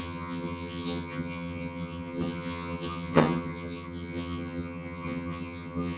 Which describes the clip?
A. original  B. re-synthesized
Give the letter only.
B